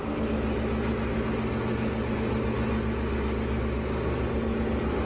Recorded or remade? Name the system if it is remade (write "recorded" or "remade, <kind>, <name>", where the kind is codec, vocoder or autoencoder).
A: recorded